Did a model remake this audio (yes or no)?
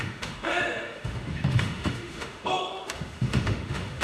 yes